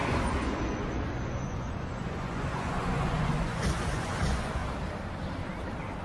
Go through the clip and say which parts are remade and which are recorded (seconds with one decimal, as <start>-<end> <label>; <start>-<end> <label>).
0.0-4.6 remade; 4.6-6.0 recorded